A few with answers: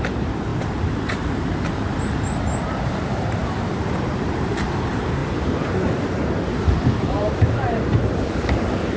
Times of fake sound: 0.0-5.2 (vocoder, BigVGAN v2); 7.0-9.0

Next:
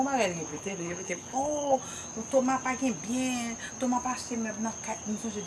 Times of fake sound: 0.5-1.8 (codec, HILCodec)

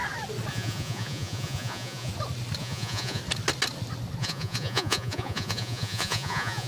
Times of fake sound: 0.5-2.1 (vocoder, Vocos); 2.6-3.2; 4.2-6.7